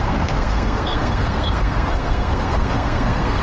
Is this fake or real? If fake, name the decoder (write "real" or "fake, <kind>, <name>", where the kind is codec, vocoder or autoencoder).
fake, codec, SNAC